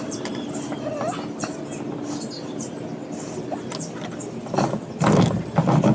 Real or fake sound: real